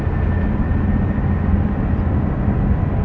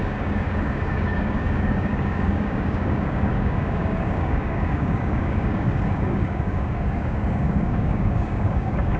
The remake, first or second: second